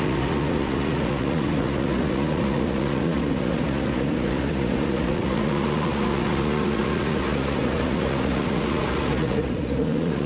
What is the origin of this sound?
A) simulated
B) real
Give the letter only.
A